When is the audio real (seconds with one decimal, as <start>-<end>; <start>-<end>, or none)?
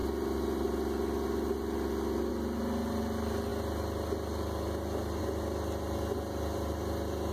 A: 0.0-7.3